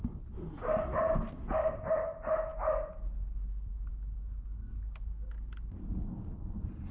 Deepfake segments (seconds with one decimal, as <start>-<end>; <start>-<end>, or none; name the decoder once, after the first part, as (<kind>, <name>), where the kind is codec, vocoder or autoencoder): none